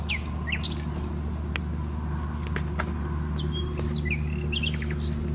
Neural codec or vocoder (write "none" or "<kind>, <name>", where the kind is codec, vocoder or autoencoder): none